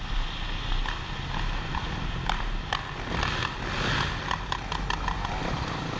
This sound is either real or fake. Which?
real